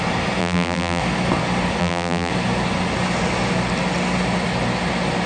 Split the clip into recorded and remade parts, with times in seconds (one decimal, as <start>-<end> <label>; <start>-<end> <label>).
0.0-0.4 recorded; 0.4-1.0 remade; 1.0-1.8 recorded; 1.8-2.3 remade; 2.3-5.3 recorded